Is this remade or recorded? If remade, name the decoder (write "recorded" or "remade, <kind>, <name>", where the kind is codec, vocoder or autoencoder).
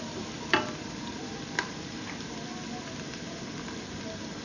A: recorded